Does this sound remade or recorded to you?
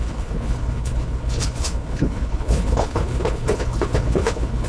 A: remade